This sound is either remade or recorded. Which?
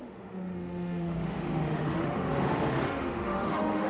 remade